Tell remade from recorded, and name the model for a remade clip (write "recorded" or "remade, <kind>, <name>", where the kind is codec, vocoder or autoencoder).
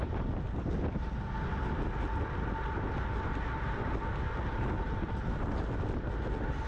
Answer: recorded